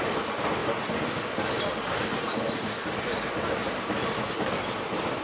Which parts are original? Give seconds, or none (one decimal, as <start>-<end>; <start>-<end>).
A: 0.0-5.2